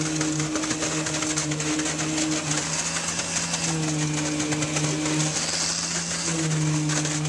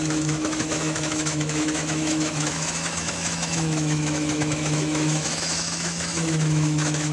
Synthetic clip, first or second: second